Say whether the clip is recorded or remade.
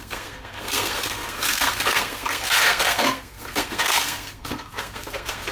remade